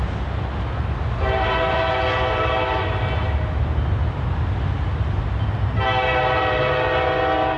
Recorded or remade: recorded